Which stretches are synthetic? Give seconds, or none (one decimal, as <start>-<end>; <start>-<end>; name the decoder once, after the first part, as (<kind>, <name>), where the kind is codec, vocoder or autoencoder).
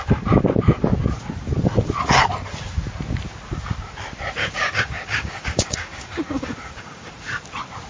4.4-7.1 (codec, DAC)